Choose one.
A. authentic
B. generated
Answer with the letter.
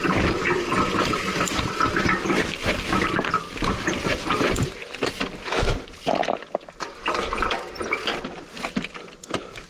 A